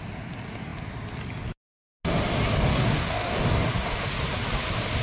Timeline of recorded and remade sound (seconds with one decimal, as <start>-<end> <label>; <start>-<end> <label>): 0.0-2.7 recorded; 2.7-3.4 remade; 3.4-5.0 recorded